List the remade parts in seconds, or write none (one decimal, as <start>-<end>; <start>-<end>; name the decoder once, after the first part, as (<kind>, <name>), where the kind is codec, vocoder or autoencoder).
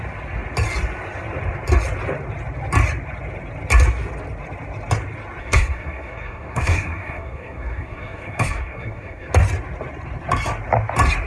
5.4-9.3 (codec, SNAC)